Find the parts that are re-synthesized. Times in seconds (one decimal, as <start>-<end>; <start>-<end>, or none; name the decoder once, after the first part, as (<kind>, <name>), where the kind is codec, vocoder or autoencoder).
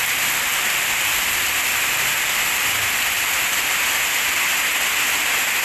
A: 0.5-3.9 (vocoder, BigVGAN v2)